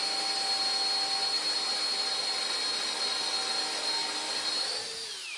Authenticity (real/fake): real